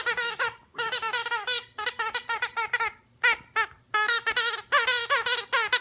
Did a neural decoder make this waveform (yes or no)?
no